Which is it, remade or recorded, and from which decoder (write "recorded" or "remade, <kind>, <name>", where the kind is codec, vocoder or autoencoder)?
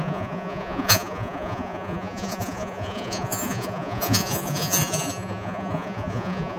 remade, vocoder, Vocos